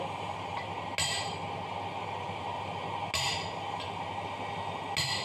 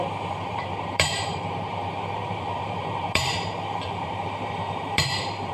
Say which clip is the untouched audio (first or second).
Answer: first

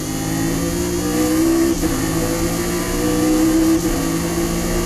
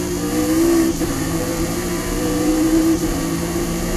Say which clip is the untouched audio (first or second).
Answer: first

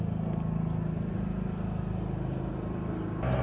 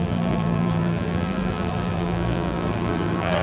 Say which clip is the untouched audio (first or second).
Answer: first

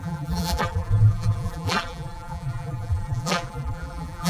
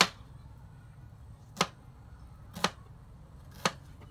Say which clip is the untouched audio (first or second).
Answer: second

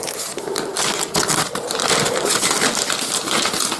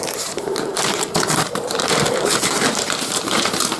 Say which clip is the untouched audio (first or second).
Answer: first